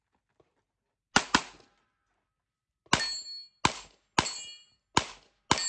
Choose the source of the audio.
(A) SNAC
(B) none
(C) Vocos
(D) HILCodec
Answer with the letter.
B